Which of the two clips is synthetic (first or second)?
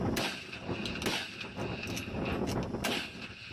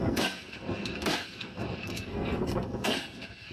second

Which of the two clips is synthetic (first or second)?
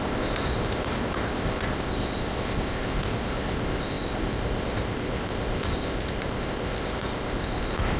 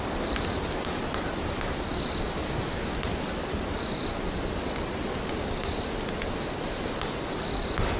first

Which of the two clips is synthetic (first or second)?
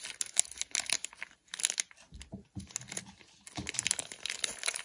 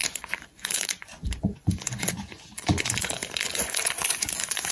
second